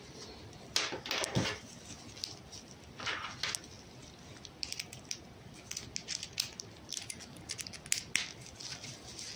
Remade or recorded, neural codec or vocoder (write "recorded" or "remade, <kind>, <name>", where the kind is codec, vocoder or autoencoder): recorded